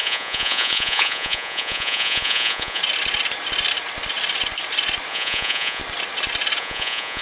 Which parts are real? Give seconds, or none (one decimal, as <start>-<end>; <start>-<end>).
2.8-5.1; 5.8-6.6